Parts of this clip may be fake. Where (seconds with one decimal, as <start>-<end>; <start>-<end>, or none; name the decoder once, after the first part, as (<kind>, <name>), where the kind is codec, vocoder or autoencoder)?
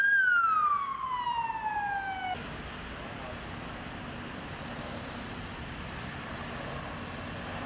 none